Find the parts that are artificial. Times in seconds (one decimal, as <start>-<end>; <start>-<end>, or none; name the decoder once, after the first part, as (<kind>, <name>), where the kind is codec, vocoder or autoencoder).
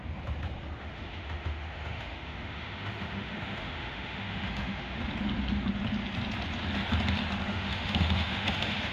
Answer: 0.8-5.0 (autoencoder, DAC-VAE); 7.5-8.9